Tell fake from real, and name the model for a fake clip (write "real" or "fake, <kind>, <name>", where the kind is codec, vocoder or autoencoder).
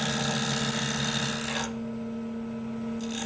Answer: real